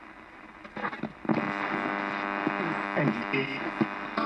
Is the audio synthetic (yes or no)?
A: no